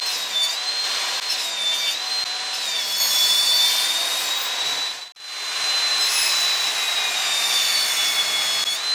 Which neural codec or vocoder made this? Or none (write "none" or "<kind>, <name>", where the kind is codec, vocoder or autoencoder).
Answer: none